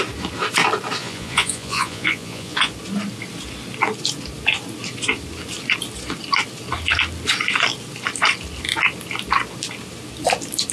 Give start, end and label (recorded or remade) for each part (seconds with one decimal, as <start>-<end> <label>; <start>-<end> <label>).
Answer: 0.0-1.0 recorded; 1.0-2.7 remade; 2.7-10.7 recorded